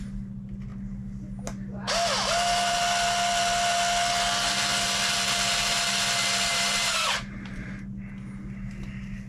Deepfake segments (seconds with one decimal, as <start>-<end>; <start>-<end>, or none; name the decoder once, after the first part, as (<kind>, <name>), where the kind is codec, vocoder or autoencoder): 6.5-7.7 (vocoder, BigVGAN v2)